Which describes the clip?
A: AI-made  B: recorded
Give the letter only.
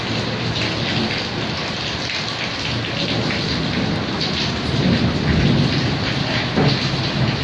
B